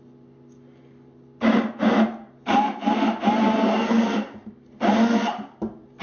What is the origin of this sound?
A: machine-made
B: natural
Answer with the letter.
B